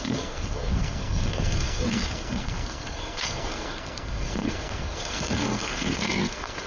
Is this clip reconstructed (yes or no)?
yes